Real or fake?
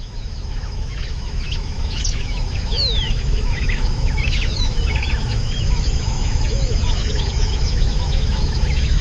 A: fake